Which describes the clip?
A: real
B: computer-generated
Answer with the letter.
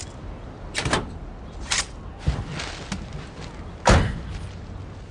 A